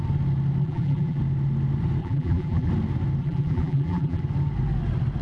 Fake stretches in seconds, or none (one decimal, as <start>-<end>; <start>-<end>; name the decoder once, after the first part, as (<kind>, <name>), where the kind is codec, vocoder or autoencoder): 0.6-1.2 (vocoder, BigVGAN v2); 2.0-2.7; 3.2-4.2

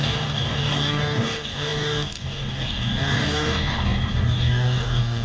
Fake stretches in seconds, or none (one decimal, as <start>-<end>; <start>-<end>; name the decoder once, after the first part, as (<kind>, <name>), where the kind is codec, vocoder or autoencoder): 0.0-5.2 (codec, DAC)

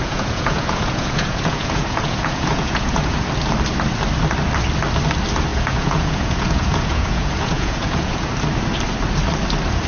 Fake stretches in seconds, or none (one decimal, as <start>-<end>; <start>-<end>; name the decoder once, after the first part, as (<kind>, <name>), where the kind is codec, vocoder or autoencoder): 0.0-3.3 (vocoder, Vocos); 5.5-8.3

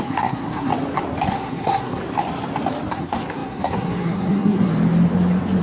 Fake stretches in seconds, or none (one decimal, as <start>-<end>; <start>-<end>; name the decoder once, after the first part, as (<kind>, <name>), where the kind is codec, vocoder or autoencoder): 0.0-0.7 (codec, SNAC); 1.3-2.0; 2.9-4.7

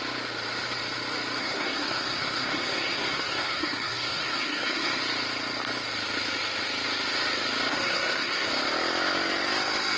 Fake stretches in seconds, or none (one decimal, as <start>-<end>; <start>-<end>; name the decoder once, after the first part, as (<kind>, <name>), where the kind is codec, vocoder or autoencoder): 1.4-5.0 (codec, SNAC); 7.7-8.5

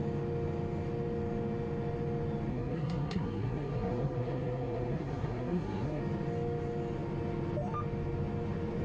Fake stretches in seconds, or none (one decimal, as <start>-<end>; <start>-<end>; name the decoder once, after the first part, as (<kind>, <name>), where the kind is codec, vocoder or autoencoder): 2.5-6.0 (codec, SNAC)

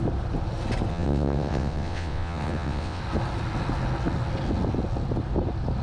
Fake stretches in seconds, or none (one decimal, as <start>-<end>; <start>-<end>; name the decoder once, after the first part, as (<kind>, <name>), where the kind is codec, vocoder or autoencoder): 0.9-3.0 (vocoder, WaveNeXt)